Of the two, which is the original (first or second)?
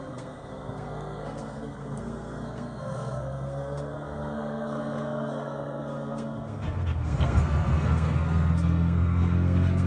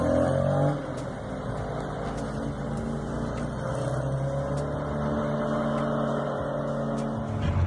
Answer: second